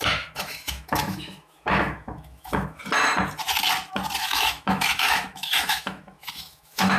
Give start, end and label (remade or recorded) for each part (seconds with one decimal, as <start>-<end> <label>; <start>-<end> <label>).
0.0-2.8 remade; 2.8-4.2 recorded; 4.2-7.0 remade

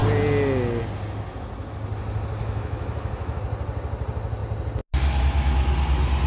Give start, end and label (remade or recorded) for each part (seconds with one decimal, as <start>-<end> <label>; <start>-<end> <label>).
0.0-2.4 recorded; 2.4-3.4 remade; 3.4-6.3 recorded

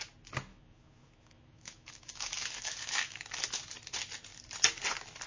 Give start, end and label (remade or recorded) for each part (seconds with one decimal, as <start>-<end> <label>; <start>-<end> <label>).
0.0-0.5 recorded; 0.5-3.7 remade; 3.7-5.3 recorded

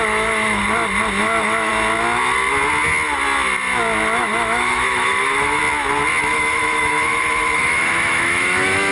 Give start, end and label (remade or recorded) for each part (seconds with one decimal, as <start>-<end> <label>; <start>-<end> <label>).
0.0-0.6 remade; 0.6-1.2 recorded; 1.2-1.7 remade; 1.7-4.2 recorded; 4.2-5.6 remade; 5.6-6.2 recorded; 6.2-8.9 remade